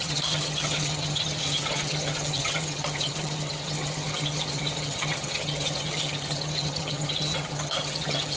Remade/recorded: remade